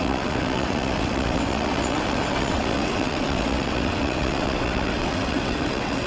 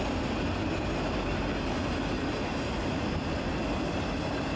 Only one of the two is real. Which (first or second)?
second